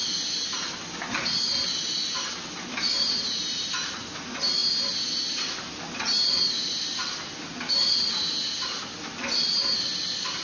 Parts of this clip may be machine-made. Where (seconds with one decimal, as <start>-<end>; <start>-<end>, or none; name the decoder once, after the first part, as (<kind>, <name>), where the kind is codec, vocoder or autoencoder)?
none